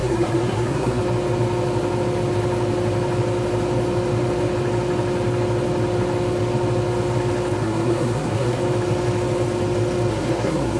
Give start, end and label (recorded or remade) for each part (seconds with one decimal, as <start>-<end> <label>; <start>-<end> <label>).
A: 0.0-1.0 remade; 1.0-7.6 recorded; 7.6-8.6 remade; 8.6-10.1 recorded; 10.1-10.8 remade